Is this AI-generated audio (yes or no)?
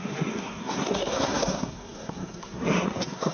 yes